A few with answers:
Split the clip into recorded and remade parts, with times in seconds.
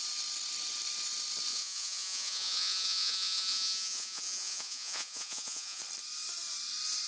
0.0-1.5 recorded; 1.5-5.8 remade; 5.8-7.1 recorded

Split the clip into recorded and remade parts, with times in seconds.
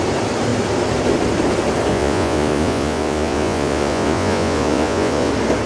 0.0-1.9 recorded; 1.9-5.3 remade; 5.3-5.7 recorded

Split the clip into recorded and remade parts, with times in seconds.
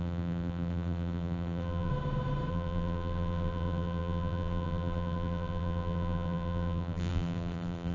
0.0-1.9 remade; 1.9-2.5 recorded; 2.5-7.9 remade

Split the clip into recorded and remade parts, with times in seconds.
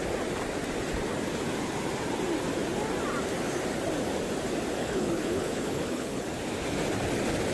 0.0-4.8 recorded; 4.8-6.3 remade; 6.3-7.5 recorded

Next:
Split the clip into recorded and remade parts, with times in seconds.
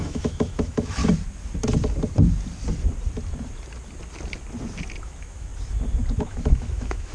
0.0-1.0 remade; 1.0-5.0 recorded; 5.0-5.5 remade; 5.5-6.2 recorded; 6.2-7.1 remade